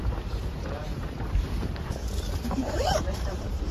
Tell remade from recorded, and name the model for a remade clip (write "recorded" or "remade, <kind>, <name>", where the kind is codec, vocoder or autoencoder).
remade, vocoder, BigVGAN v2